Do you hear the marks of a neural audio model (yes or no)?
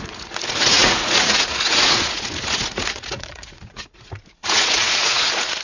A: yes